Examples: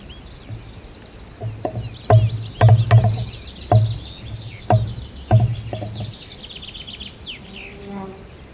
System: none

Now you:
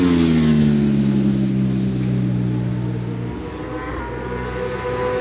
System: none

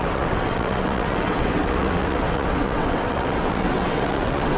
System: vocoder, WaveNeXt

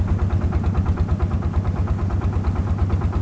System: none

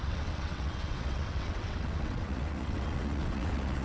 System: vocoder, WaveNeXt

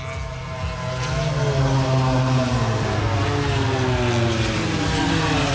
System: none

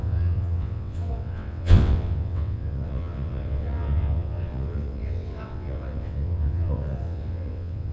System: vocoder, WaveNeXt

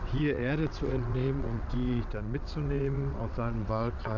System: vocoder, WaveNeXt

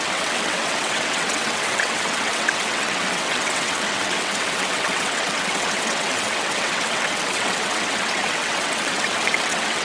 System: vocoder, WaveNeXt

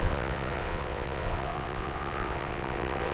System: vocoder, WaveNeXt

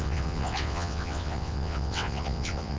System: vocoder, WaveNeXt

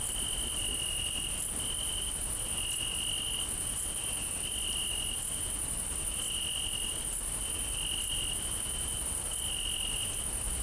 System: none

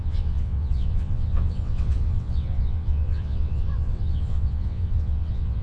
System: vocoder, WaveNeXt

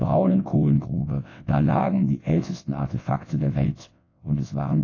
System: vocoder, WaveNeXt